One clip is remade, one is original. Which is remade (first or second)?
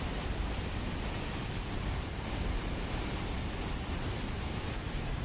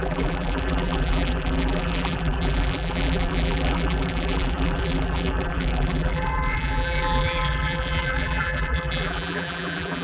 second